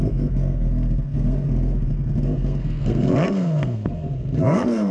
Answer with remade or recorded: remade